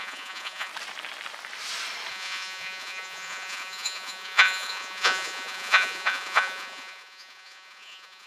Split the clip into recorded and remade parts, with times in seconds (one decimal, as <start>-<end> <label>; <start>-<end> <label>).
0.0-0.7 remade; 0.7-2.1 recorded; 2.1-8.3 remade